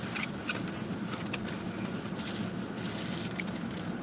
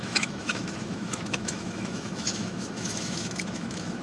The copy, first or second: second